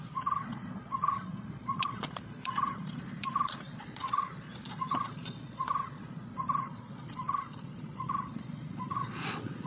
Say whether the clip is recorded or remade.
remade